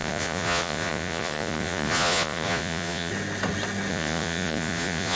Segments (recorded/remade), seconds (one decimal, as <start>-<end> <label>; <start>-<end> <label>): 0.0-3.1 remade; 3.1-3.9 recorded; 3.9-5.2 remade